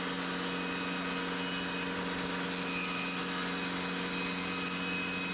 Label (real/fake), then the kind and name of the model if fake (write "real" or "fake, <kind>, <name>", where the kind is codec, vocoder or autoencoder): real